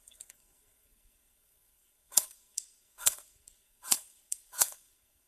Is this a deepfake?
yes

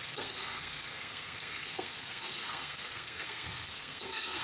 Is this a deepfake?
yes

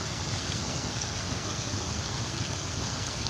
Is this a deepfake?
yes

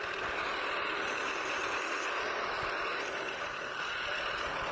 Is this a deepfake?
no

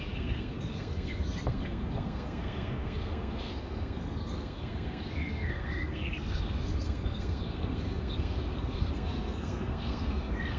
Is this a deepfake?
yes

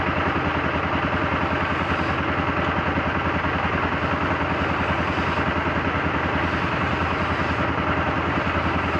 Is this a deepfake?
no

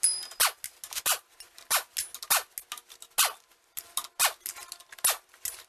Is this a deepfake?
no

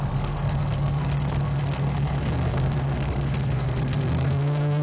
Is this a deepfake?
yes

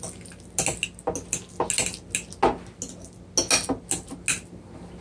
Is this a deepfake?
no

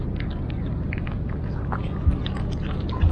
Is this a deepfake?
no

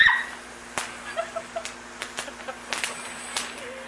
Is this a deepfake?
no